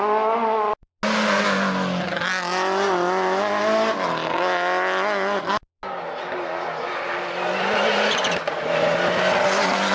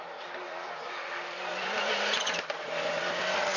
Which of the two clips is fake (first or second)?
second